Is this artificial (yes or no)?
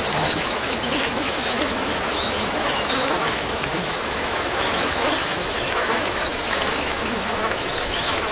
yes